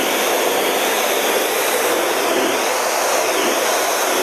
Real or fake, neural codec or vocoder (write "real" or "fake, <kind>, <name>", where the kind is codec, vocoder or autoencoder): real